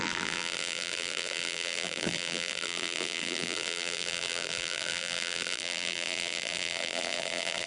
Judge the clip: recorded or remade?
remade